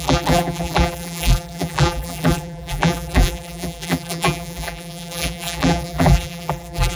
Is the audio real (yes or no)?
no